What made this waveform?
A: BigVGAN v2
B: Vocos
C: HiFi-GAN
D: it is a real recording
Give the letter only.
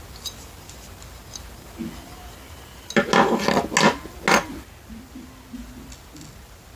D